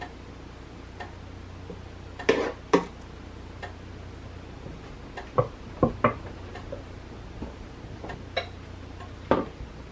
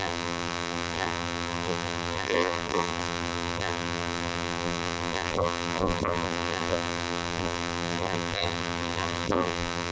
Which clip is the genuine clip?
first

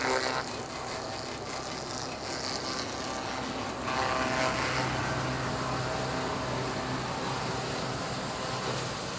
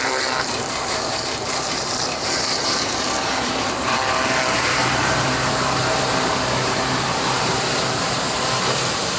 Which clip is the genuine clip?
first